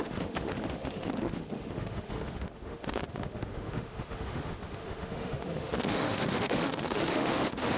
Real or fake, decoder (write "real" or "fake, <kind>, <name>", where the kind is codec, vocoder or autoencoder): fake, autoencoder, DAC-VAE